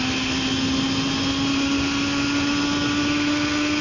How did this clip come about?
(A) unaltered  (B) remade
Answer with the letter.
A